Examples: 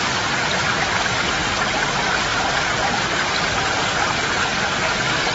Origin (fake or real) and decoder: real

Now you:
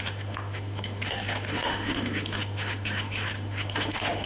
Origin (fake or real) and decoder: fake, autoencoder, DAC-VAE